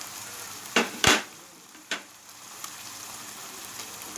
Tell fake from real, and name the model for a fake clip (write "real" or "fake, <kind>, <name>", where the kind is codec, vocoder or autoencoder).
fake, vocoder, BigVGAN v2